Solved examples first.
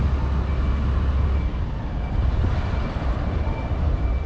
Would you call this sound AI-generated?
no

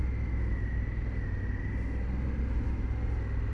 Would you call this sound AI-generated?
no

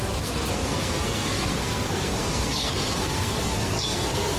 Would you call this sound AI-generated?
yes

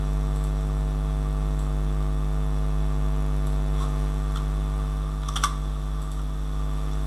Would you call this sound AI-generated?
no